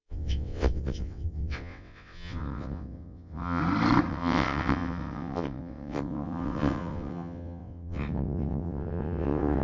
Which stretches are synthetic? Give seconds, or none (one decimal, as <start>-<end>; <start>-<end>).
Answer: 0.0-3.6; 4.1-9.6